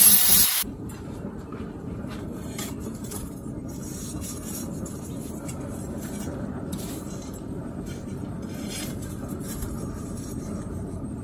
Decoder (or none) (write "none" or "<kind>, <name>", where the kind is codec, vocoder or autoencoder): vocoder, BigVGAN v2